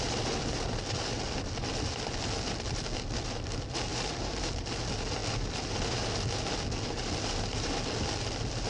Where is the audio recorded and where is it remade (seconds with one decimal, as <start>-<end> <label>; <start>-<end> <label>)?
0.0-8.7 recorded